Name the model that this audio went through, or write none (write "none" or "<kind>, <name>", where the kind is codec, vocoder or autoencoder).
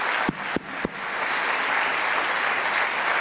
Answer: none